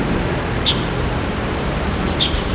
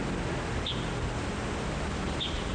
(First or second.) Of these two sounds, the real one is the second